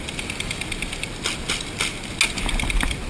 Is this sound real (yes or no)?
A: yes